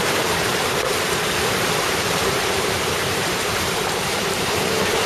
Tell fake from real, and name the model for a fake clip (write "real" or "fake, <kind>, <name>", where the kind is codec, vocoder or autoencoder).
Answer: fake, vocoder, BigVGAN v2